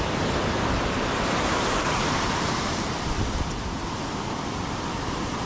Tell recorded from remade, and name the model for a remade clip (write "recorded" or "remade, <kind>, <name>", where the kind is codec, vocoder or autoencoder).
remade, vocoder, BigVGAN v2